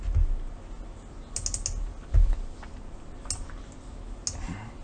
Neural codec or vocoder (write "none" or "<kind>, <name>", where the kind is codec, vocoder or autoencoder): none